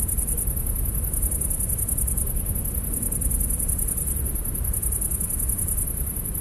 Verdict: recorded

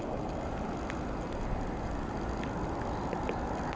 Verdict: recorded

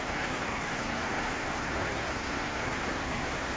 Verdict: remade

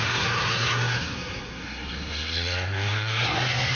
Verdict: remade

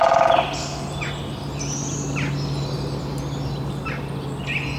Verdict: recorded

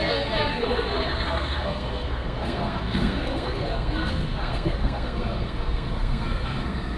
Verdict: remade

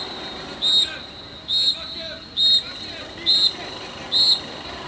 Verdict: recorded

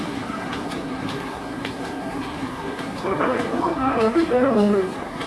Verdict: remade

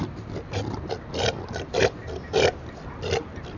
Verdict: recorded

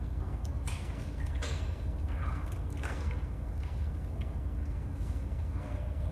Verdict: remade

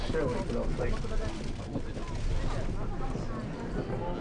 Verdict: recorded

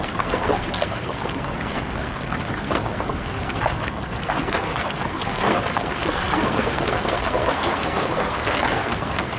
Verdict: remade